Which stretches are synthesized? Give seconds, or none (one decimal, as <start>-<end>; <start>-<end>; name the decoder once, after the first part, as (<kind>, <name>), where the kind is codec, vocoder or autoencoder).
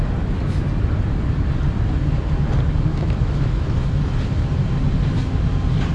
2.9-3.9 (autoencoder, DAC-VAE)